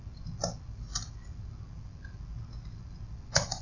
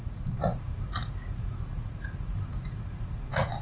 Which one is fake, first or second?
second